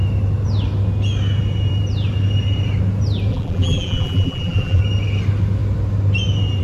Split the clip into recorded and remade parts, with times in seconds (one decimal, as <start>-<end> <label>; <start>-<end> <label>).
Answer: 0.0-3.3 recorded; 3.3-4.8 remade; 4.8-6.6 recorded

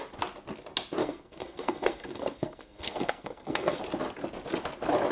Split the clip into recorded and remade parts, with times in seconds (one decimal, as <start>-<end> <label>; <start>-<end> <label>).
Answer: 0.0-1.0 recorded; 1.0-3.8 remade; 3.8-5.1 recorded

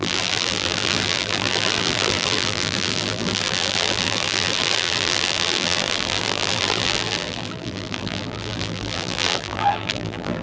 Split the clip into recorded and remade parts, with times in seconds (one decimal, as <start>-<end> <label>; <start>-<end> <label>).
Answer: 0.0-10.4 remade

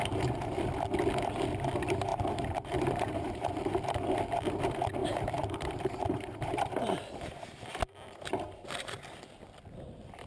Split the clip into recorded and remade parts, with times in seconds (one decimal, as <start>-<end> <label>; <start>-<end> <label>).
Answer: 0.0-2.1 recorded; 2.1-3.5 remade; 3.5-5.0 recorded; 5.0-7.6 remade; 7.6-10.3 recorded

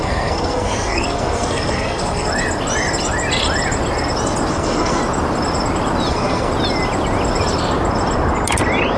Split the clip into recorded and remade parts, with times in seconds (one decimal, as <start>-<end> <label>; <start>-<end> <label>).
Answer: 0.0-2.3 remade; 2.3-4.5 recorded; 4.5-5.0 remade; 5.0-6.1 recorded; 6.1-6.5 remade; 6.5-9.0 recorded

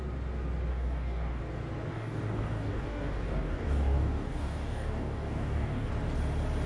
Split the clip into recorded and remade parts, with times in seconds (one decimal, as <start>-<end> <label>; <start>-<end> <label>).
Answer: 0.0-0.7 recorded; 0.7-1.4 remade; 1.4-1.9 recorded; 1.9-5.9 remade; 5.9-6.7 recorded

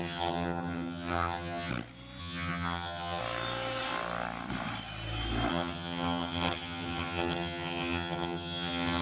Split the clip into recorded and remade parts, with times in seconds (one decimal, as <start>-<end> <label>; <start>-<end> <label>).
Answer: 0.0-1.7 remade; 1.7-2.2 recorded; 2.2-3.2 remade; 3.2-5.5 recorded; 5.5-9.0 remade

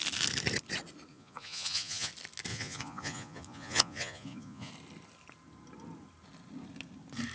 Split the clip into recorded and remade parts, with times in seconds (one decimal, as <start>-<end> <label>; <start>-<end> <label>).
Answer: 0.0-1.1 recorded; 1.1-2.1 remade; 2.1-2.5 recorded; 2.5-4.7 remade; 4.7-7.3 recorded